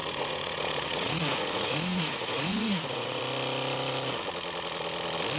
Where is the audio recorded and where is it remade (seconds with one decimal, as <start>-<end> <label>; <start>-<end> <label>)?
0.0-3.2 remade; 3.2-5.4 recorded